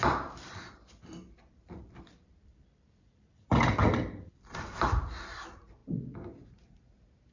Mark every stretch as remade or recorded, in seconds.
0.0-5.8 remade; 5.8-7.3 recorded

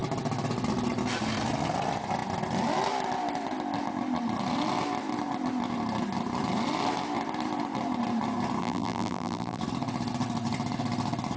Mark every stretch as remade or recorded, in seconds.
0.0-8.6 recorded; 8.6-9.6 remade; 9.6-11.4 recorded